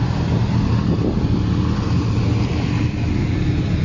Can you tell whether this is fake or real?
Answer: real